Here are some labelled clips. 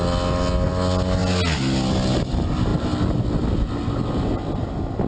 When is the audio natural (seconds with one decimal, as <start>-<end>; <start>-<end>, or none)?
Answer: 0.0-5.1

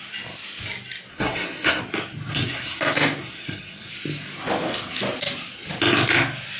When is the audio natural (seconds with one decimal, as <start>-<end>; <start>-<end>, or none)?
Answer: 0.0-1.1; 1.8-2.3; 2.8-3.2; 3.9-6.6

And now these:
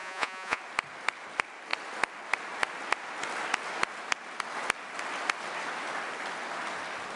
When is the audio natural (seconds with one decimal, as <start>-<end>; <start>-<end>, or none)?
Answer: 0.6-7.2

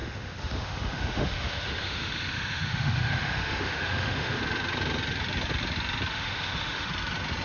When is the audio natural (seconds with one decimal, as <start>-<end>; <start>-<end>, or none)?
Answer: 4.4-6.1; 6.9-7.4

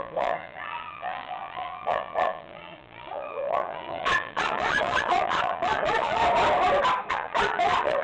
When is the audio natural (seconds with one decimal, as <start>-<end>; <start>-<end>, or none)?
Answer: 6.2-7.1